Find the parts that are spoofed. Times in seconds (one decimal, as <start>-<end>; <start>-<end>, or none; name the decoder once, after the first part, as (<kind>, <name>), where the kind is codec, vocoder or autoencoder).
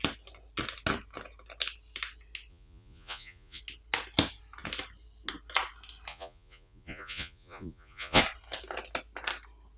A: 2.5-3.6 (vocoder, Vocos); 6.1-8.2